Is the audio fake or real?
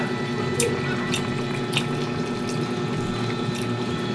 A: fake